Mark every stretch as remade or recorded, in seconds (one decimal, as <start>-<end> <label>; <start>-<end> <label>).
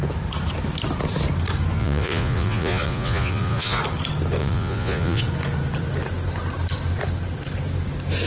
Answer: 0.0-1.8 recorded; 1.8-3.8 remade; 3.8-4.4 recorded; 4.4-5.2 remade; 5.2-8.3 recorded